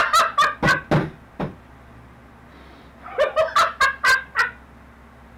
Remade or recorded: recorded